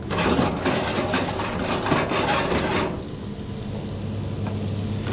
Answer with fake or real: real